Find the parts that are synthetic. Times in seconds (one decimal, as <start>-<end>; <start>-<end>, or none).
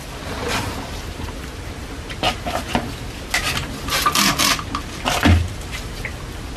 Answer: 0.4-1.5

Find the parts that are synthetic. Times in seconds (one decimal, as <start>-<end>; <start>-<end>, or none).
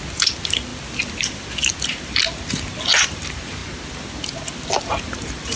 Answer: none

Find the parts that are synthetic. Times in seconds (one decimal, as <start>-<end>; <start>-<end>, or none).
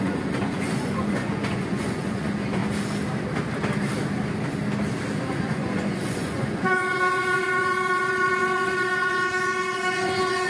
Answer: 0.0-2.6; 5.3-10.5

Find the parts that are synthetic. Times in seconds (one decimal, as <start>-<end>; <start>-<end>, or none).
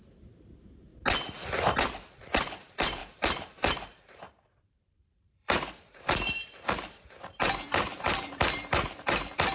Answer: 0.0-0.9; 1.9-9.5